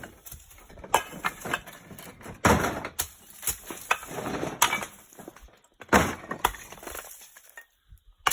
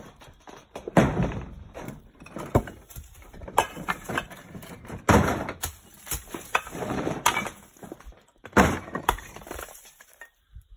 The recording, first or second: first